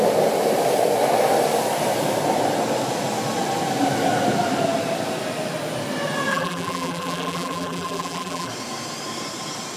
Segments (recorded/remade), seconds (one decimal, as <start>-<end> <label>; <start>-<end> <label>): 0.0-6.3 recorded; 6.3-8.5 remade; 8.5-9.8 recorded